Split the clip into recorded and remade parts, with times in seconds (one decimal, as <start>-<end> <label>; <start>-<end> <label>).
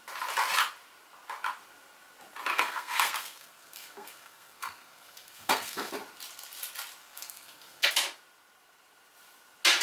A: 0.0-2.5 recorded; 2.5-5.9 remade; 5.9-7.0 recorded; 7.0-7.9 remade; 7.9-9.8 recorded